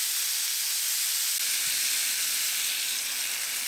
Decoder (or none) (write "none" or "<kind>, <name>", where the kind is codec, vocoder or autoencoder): none